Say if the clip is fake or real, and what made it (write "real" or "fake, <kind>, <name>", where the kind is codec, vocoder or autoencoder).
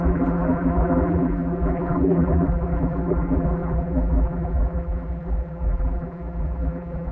fake, vocoder, BigVGAN v2